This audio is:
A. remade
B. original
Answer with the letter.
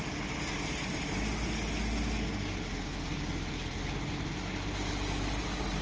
B